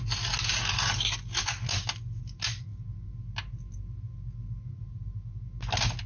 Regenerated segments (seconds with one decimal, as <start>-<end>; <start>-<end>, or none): none